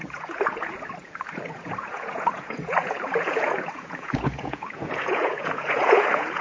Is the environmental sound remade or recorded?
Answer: remade